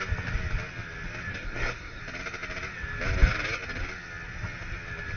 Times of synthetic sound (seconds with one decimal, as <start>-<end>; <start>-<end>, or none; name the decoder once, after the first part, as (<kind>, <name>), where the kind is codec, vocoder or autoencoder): 1.3-2.0 (codec, SNAC)